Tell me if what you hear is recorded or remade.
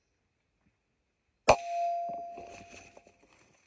recorded